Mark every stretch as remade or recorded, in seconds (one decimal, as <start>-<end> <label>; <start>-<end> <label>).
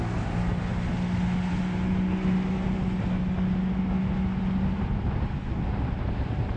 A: 0.0-6.6 recorded